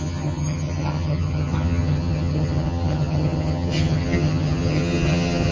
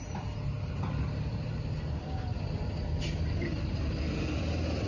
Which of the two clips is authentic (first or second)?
second